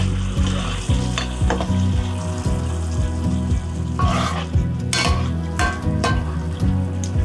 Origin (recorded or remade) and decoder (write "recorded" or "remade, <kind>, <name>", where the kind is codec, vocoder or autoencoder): recorded